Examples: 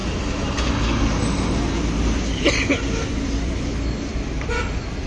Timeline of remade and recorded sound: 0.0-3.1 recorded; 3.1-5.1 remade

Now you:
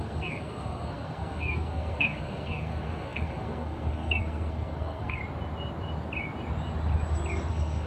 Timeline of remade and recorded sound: 0.0-5.2 remade; 5.2-7.5 recorded; 7.5-7.9 remade

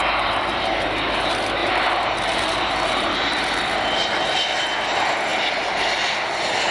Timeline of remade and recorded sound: 0.0-1.6 recorded; 1.6-3.6 remade; 3.6-6.7 recorded

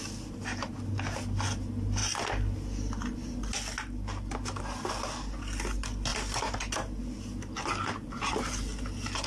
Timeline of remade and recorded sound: 0.0-9.3 recorded

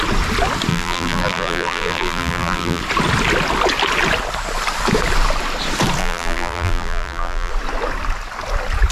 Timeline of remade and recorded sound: 0.0-0.7 recorded; 0.7-2.8 remade; 2.8-6.0 recorded; 6.0-7.5 remade; 7.5-8.9 recorded

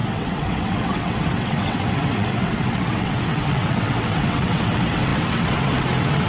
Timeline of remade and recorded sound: 0.0-6.3 remade